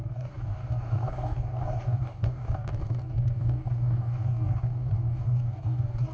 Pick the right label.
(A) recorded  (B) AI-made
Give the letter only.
B